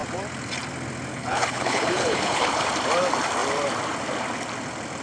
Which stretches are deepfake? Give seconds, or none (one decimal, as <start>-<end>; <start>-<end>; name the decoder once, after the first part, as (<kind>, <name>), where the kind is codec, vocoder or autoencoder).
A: 1.1-2.7 (codec, HILCodec)